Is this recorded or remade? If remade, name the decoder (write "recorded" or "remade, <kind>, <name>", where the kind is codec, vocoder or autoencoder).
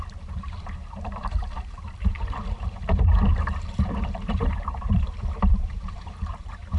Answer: remade, vocoder, BigVGAN v2